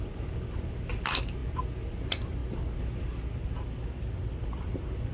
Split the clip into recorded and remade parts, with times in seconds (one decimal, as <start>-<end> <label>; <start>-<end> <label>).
0.0-5.1 recorded